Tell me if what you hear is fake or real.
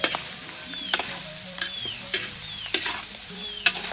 fake